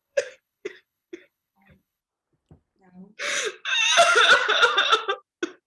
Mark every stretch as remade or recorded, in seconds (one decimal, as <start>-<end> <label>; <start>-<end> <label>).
0.0-2.0 remade; 2.0-5.7 recorded